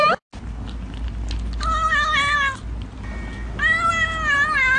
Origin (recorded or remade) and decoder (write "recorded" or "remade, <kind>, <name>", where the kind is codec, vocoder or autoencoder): recorded